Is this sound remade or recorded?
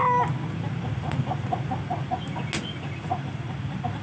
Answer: recorded